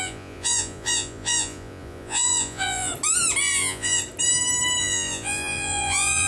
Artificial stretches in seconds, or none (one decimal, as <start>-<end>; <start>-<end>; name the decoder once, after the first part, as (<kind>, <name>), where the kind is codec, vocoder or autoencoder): 0.0-2.9 (vocoder, Vocos); 3.4-4.0; 4.8-6.3